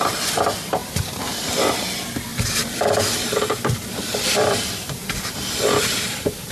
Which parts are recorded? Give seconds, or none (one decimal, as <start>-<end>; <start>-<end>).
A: 0.0-0.8; 1.5-2.3